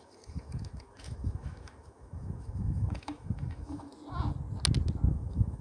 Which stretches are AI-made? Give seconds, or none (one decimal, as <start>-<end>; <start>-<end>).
0.0-3.9; 5.1-5.6

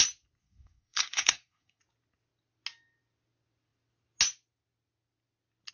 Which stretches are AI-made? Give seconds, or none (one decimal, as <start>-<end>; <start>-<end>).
0.4-1.8

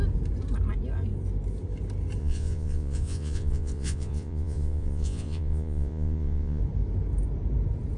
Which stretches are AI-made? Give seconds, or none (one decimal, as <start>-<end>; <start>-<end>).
2.2-6.6

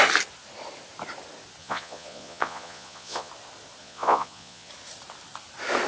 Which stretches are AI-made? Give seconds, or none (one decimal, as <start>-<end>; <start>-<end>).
1.6-3.3; 3.8-4.7

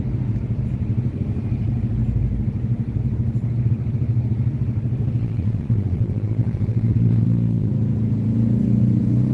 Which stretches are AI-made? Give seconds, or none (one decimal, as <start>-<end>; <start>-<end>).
5.2-7.7